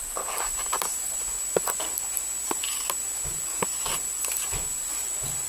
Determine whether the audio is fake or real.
fake